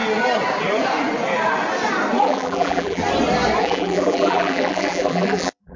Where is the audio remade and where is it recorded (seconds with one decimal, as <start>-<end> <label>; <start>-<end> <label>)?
0.0-2.2 recorded; 2.2-3.0 remade; 3.0-3.6 recorded; 3.6-5.8 remade